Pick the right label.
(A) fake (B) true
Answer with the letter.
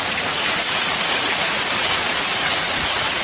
A